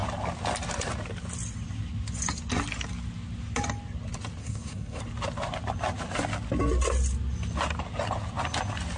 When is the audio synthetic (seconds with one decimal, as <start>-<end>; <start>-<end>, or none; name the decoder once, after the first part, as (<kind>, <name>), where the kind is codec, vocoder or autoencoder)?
4.4-5.0 (codec, SNAC)